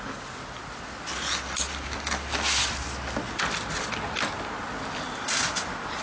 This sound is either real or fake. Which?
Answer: real